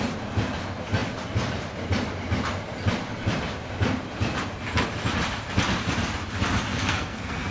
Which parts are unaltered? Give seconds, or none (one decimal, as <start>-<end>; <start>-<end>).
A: 0.0-6.7